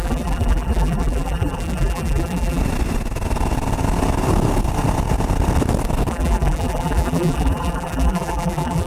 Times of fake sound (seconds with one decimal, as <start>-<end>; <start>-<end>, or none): 0.0-2.6; 6.1-8.9